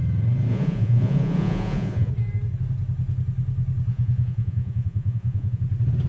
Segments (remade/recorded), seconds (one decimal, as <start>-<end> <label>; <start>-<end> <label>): 0.0-0.5 recorded; 0.5-2.1 remade; 2.1-3.9 recorded; 3.9-5.6 remade; 5.6-6.1 recorded